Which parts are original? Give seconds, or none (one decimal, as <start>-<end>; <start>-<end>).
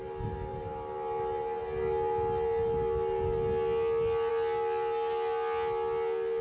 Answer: 0.0-6.4